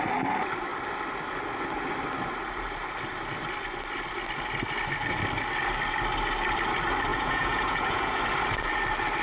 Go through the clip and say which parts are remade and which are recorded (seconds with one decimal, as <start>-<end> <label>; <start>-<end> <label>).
0.0-7.1 recorded; 7.1-8.2 remade; 8.2-9.2 recorded